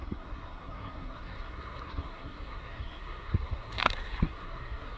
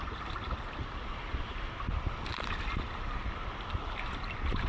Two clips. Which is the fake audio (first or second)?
first